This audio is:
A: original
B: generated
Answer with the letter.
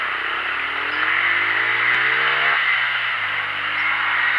A